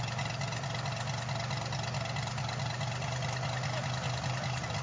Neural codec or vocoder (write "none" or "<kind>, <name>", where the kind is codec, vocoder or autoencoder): none